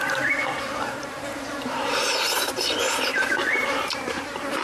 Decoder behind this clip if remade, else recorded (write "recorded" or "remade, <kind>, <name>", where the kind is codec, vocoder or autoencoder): remade, vocoder, BigVGAN v2